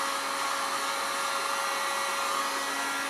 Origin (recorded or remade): recorded